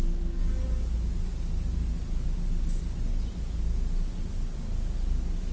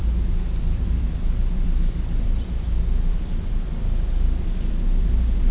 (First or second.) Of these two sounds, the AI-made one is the second